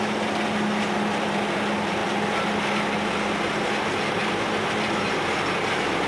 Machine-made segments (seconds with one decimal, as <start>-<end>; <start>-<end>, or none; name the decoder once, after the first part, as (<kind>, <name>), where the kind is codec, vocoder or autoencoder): none